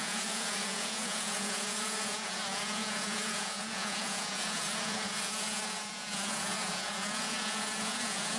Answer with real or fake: fake